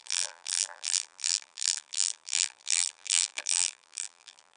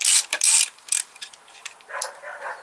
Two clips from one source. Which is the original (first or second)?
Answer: second